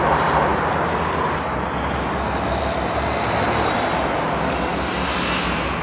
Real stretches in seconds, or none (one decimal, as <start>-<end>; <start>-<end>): 0.0-5.8